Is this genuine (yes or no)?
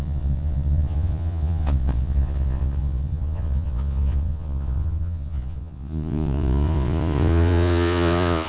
no